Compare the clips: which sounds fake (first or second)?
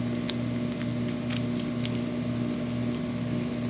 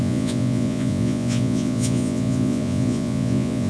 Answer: second